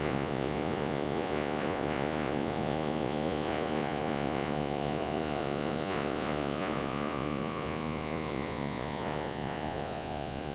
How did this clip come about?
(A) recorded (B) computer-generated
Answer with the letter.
B